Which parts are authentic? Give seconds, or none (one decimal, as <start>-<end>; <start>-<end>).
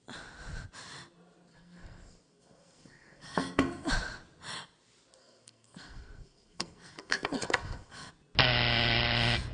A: 0.0-1.5; 3.9-5.2; 8.1-9.5